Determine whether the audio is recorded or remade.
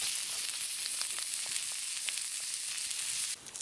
recorded